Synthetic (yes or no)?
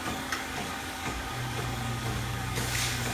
yes